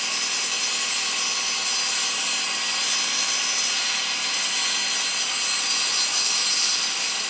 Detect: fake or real real